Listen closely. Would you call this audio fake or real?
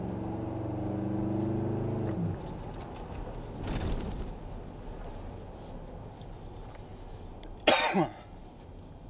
real